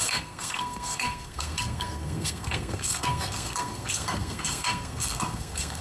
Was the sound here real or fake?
fake